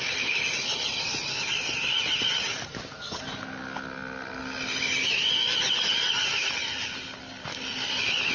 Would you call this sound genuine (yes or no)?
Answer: yes